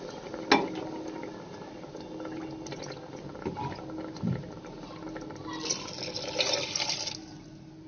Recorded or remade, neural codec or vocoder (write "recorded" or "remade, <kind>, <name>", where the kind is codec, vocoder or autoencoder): recorded